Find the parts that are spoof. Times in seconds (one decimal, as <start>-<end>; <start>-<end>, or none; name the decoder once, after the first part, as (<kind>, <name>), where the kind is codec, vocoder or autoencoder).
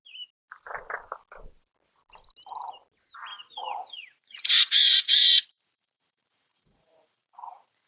3.3-7.9 (vocoder, Vocos)